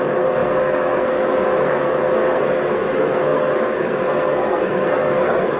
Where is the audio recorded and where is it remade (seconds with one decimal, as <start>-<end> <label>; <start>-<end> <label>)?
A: 0.0-5.6 remade